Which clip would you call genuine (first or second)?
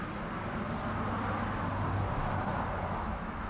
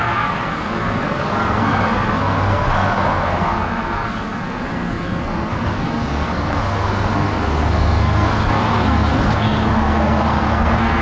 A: first